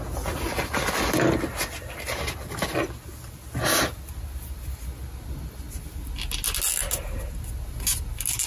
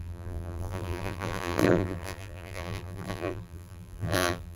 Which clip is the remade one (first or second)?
second